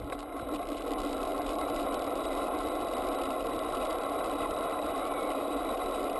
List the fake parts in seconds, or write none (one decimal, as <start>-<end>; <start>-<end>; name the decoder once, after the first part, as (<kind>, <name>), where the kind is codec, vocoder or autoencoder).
1.3-2.8 (vocoder, BigVGAN v2); 3.9-6.2